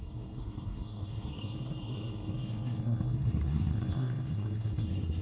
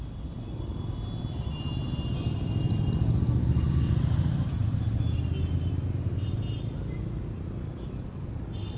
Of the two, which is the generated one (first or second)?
first